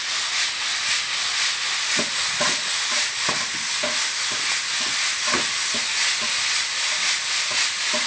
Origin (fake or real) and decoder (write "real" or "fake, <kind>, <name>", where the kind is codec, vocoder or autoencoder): real